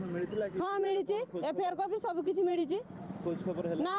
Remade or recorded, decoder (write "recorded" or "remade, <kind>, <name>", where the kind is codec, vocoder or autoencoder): remade, vocoder, BigVGAN v2